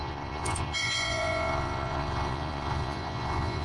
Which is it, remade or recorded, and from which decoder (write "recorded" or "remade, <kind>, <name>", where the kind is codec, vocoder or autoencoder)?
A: remade, vocoder, Vocos